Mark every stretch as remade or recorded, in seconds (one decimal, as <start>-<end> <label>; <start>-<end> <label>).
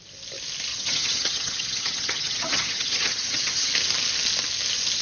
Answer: 0.0-0.7 recorded; 0.7-3.7 remade; 3.7-5.0 recorded